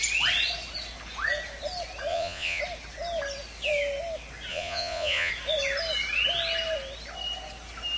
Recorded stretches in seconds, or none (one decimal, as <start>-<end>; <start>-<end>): 0.0-2.1; 2.6-4.5; 5.3-8.0